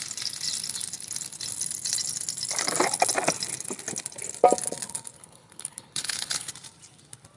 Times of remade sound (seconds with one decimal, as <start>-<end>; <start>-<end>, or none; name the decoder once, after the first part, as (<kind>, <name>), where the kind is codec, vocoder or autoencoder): 5.2-6.5 (codec, HILCodec)